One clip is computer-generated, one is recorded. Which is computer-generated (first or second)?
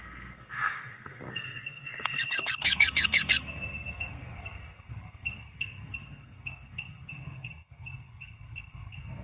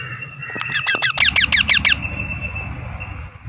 first